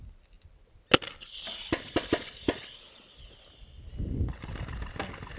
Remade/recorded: recorded